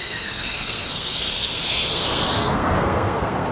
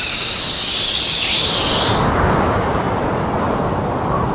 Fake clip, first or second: first